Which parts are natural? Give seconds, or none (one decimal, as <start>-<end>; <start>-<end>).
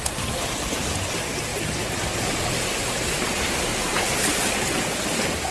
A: 0.0-5.5